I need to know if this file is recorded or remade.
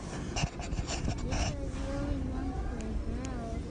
recorded